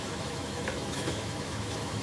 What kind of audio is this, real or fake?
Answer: fake